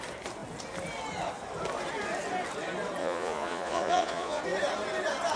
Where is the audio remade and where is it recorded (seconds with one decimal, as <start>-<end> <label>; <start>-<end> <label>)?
0.0-3.0 recorded; 3.0-4.4 remade; 4.4-5.4 recorded